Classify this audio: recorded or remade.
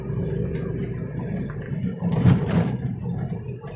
recorded